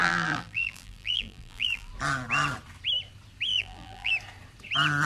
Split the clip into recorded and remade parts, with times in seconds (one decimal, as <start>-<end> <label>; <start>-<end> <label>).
0.0-1.9 remade; 1.9-3.5 recorded; 3.5-4.1 remade; 4.1-5.0 recorded